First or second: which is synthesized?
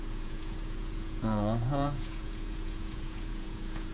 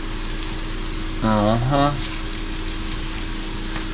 first